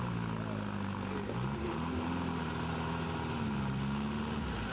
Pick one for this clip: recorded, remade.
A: recorded